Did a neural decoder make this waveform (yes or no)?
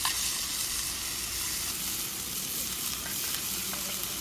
no